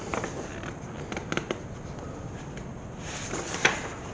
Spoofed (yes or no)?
no